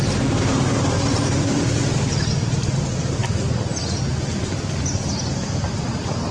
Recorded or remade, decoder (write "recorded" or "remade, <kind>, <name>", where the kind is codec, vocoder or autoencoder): recorded